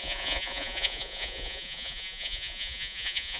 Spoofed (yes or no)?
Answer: yes